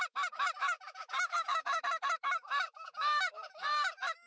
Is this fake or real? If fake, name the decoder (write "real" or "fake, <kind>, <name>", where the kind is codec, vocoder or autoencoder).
fake, autoencoder, DAC-VAE